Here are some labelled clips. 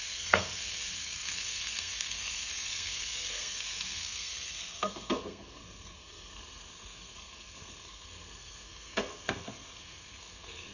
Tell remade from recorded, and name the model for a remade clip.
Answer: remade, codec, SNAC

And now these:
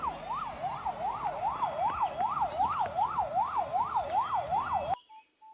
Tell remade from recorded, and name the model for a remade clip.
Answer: recorded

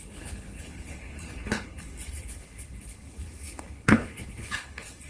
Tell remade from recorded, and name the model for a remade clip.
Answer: remade, codec, HILCodec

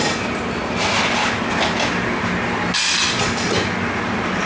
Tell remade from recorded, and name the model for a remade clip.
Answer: recorded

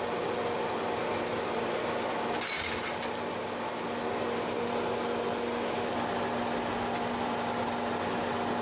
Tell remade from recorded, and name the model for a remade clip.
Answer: recorded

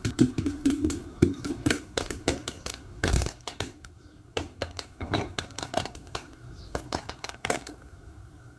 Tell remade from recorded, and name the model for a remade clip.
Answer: remade, codec, SNAC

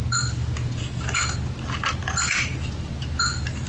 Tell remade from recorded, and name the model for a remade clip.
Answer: recorded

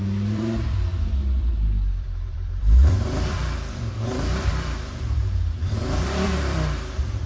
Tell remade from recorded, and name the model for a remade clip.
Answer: remade, vocoder, BigVGAN v2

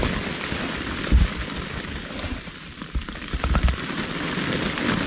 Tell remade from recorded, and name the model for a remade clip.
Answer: recorded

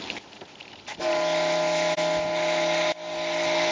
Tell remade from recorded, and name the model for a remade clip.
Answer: recorded